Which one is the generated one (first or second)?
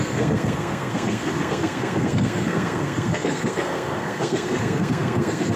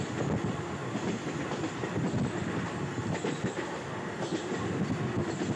first